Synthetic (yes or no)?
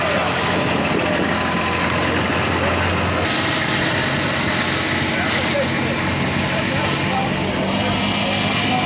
no